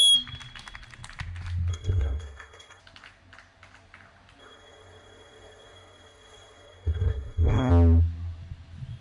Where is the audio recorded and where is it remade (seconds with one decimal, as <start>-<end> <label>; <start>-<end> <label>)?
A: 0.0-1.7 recorded; 1.7-2.8 remade; 2.8-4.4 recorded; 4.4-7.7 remade; 7.7-9.0 recorded